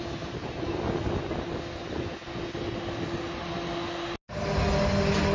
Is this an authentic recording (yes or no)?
yes